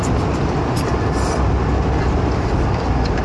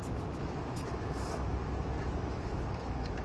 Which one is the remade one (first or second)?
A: second